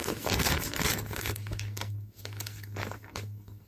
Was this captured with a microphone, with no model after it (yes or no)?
no